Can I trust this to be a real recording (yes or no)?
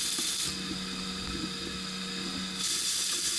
yes